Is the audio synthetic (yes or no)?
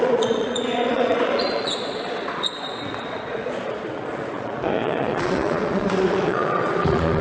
yes